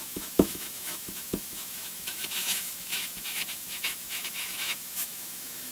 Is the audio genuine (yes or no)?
no